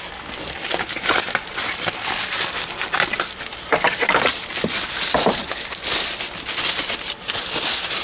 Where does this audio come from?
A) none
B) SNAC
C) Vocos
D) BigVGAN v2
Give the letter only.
D